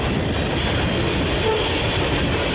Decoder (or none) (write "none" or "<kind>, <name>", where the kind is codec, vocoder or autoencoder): none